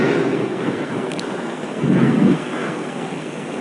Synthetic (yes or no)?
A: yes